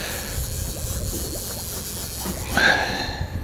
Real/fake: real